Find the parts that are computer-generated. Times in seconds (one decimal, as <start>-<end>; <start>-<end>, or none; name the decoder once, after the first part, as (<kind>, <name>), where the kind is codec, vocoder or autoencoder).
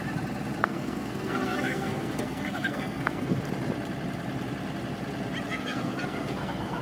0.6-3.4 (codec, SNAC); 5.5-6.8